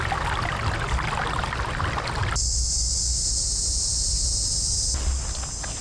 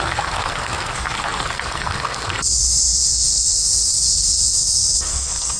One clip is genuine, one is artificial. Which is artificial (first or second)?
second